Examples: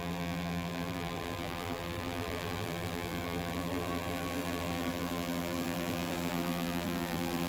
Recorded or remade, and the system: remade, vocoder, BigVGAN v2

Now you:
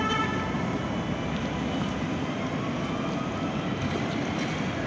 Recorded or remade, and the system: recorded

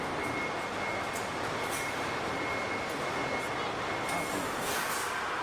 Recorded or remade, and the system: recorded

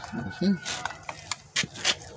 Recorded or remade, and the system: recorded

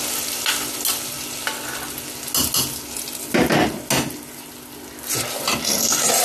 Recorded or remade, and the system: recorded